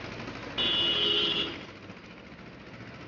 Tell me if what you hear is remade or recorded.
recorded